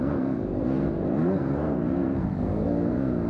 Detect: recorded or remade remade